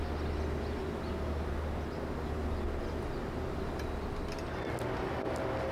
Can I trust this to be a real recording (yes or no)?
yes